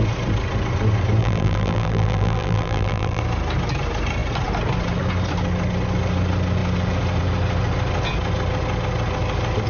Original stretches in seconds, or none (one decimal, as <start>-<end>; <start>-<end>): 0.0-1.2; 3.2-9.7